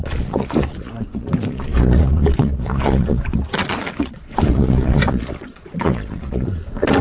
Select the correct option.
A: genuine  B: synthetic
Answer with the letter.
B